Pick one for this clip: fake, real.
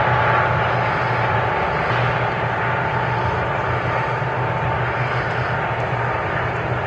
real